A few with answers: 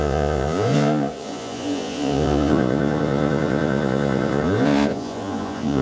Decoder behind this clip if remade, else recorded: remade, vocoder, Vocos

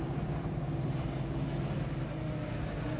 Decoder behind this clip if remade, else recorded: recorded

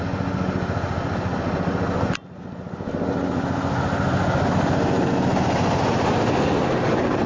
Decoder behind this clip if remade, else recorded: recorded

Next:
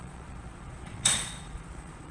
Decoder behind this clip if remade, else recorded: remade, vocoder, Vocos